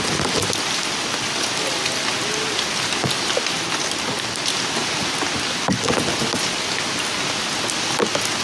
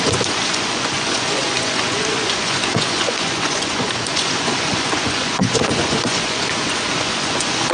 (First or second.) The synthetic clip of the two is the second